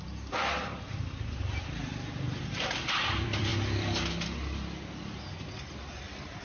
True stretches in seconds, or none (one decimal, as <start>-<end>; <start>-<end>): 3.5-6.0